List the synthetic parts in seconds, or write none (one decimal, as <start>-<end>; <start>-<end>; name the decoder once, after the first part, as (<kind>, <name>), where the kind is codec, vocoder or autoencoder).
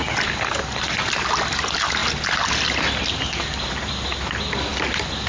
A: none